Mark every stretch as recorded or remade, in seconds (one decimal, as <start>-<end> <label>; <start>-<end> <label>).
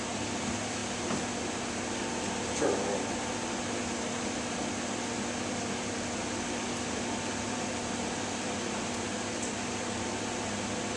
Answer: 0.0-11.0 recorded